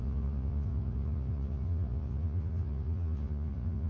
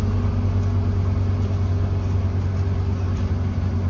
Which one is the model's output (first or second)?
first